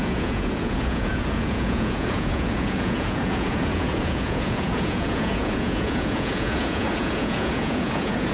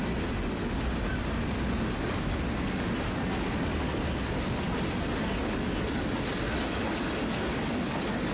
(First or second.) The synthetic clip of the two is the first